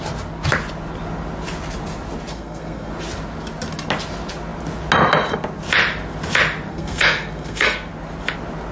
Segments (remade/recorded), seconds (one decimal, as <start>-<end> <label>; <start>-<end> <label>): 0.0-2.3 recorded; 2.3-2.9 remade; 2.9-6.7 recorded; 6.7-7.9 remade; 7.9-8.7 recorded